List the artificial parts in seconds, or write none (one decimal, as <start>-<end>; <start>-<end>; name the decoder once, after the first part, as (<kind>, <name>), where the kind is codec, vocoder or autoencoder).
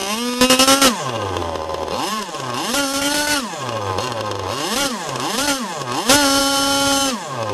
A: 1.0-5.7 (vocoder, BigVGAN v2); 6.4-7.5